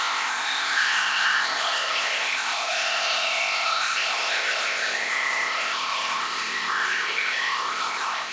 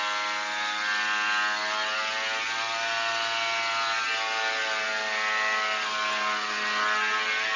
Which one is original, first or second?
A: second